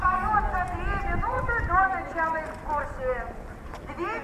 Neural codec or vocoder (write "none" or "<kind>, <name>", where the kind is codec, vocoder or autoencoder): none